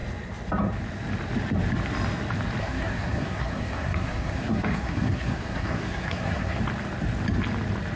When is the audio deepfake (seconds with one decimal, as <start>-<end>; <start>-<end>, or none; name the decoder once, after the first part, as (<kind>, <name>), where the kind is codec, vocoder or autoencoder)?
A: 2.6-6.6 (codec, SNAC)